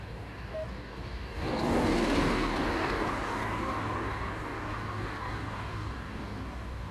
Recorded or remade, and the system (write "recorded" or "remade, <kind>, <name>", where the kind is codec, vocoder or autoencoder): remade, codec, DAC